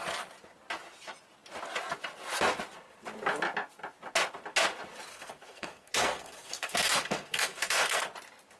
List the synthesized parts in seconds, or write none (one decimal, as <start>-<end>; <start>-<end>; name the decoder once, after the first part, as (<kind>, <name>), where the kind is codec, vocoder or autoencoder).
5.1-8.0 (codec, SNAC)